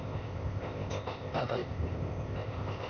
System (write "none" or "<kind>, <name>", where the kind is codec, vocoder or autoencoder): codec, ZipCodec